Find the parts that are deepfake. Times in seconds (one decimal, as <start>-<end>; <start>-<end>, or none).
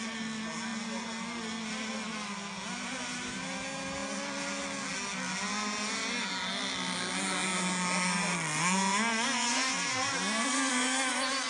none